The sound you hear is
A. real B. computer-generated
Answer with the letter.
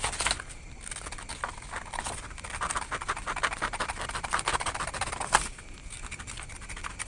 A